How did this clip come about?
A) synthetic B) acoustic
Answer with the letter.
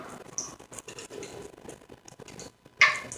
B